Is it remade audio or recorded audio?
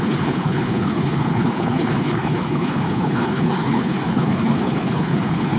remade